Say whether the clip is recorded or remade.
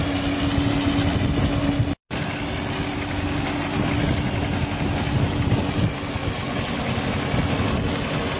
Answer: recorded